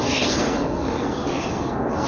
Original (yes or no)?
no